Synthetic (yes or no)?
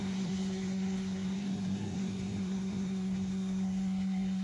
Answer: yes